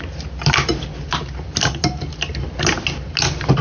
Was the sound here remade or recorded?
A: recorded